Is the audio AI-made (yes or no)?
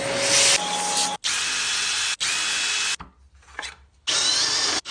no